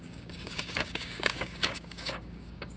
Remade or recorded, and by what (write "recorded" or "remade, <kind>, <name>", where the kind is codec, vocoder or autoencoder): remade, codec, DAC